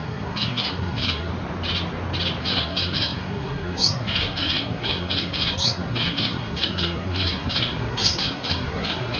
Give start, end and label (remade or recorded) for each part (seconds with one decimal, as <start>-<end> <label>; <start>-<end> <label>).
0.0-1.3 remade; 1.3-2.4 recorded; 2.4-9.2 remade